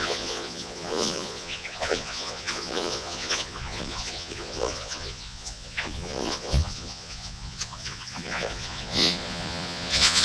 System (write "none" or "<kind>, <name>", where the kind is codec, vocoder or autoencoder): vocoder, Vocos